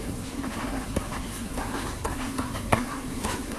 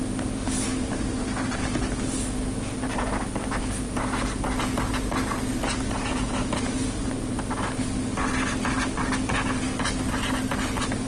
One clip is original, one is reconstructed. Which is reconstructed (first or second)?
first